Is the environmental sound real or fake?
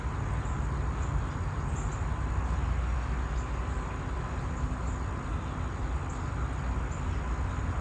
real